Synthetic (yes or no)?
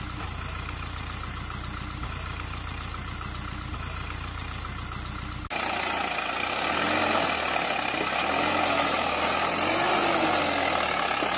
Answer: no